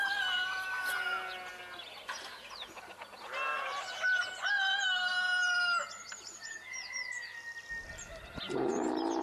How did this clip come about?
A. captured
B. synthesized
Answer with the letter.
A